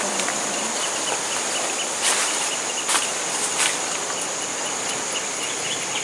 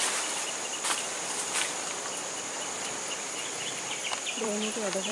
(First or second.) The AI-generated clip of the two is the second